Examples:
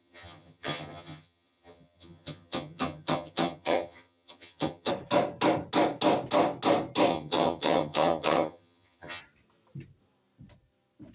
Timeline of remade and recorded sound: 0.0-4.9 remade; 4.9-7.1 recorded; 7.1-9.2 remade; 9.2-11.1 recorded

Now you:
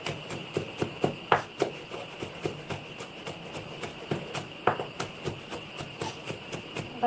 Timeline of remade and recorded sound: 0.0-7.1 recorded